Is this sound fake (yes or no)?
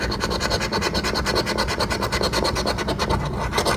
no